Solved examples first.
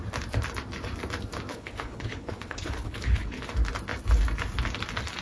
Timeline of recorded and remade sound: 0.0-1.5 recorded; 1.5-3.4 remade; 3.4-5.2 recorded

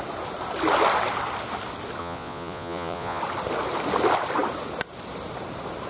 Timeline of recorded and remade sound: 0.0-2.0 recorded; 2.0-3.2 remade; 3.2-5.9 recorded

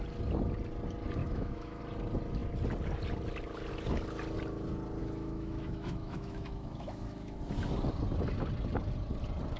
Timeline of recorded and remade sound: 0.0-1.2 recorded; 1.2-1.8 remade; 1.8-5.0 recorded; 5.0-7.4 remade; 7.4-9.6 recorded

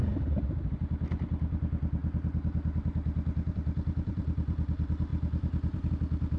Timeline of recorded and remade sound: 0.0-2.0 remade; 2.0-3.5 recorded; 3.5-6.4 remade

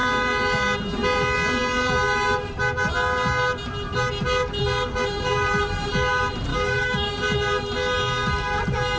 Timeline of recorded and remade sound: 0.0-6.5 recorded; 6.5-7.1 remade; 7.1-9.0 recorded

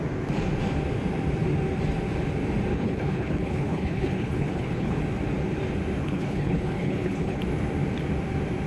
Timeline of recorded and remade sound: 0.0-2.7 recorded; 2.7-5.0 remade; 5.0-6.0 recorded; 6.0-7.4 remade; 7.4-8.7 recorded